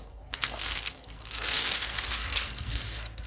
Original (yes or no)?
no